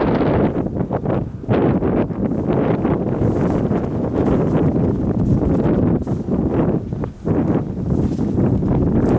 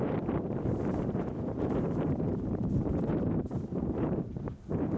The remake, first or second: second